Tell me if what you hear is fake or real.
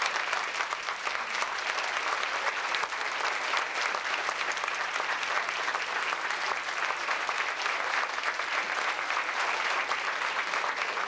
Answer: fake